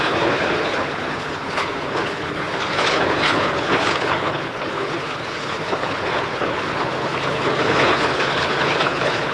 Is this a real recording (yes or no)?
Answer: no